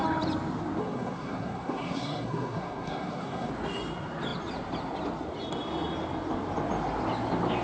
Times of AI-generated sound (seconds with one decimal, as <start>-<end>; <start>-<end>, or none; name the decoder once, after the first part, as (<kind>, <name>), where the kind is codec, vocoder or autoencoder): 0.8-3.5 (codec, SNAC)